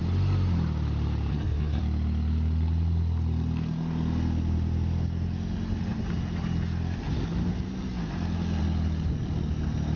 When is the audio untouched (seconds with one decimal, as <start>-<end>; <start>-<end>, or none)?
0.0-1.3; 1.8-10.0